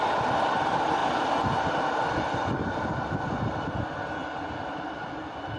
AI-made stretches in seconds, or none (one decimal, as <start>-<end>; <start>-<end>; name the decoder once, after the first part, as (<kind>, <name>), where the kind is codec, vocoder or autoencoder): none